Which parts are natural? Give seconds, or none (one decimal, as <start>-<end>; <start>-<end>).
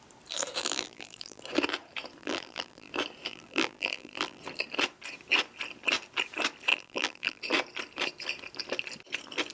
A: 0.0-0.6; 1.4-2.2; 2.9-3.3; 4.4-6.7; 7.4-9.5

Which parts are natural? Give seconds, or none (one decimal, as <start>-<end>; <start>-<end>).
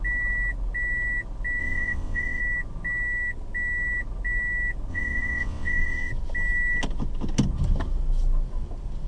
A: 0.0-1.6; 2.4-4.9; 6.1-9.1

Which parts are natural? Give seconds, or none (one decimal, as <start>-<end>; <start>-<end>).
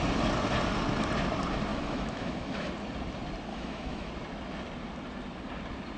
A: 0.0-1.7; 2.7-3.5; 4.1-6.0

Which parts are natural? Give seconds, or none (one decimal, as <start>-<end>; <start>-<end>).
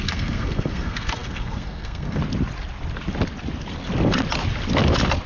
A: 2.2-5.3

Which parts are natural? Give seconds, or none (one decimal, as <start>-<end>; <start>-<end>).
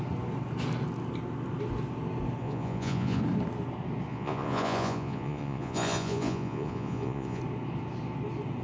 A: 0.0-2.4; 3.2-4.1; 7.4-8.6